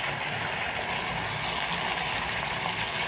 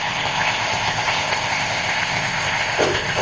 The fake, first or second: second